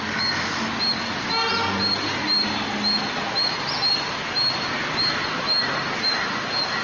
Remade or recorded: recorded